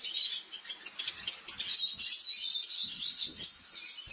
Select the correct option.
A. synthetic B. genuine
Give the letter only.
B